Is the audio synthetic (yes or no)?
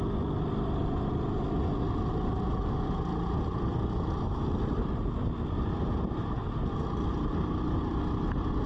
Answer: no